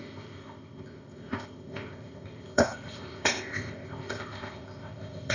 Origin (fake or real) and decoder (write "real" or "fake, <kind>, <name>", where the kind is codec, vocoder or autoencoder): fake, codec, ZipCodec